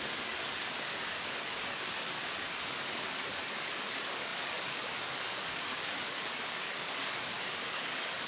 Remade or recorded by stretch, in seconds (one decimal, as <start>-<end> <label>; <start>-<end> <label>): 0.0-8.3 remade